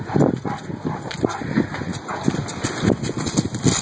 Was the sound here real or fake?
real